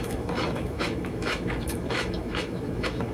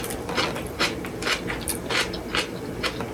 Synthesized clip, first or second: first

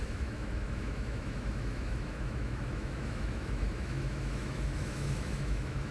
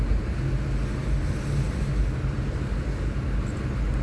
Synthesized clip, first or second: first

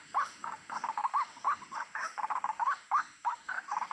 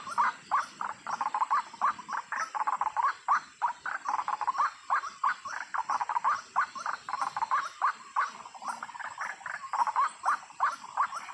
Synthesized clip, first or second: first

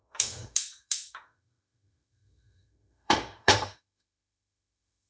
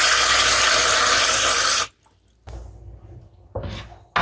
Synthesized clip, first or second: first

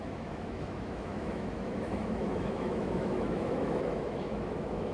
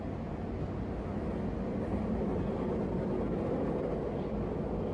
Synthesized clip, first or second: first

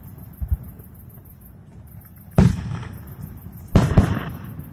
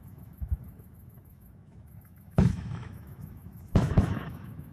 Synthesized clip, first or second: second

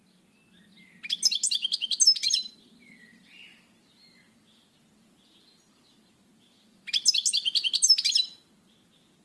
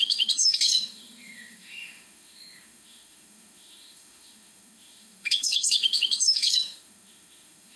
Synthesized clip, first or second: second